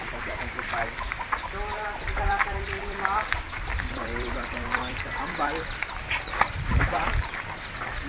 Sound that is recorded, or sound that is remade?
remade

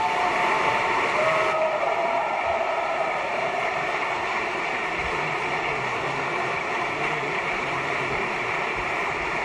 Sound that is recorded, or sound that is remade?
remade